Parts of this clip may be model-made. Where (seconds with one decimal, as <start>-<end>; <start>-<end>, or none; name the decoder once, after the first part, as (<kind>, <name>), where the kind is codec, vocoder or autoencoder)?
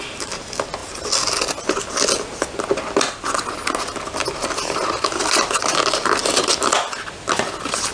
none